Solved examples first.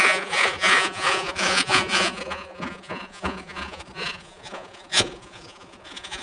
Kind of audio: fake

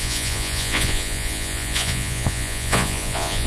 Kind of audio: fake